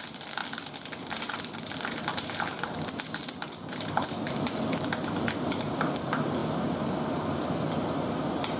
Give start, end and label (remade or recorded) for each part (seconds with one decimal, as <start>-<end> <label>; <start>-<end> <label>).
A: 0.0-0.4 remade; 0.4-1.0 recorded; 1.0-6.4 remade; 6.4-7.0 recorded; 7.0-8.6 remade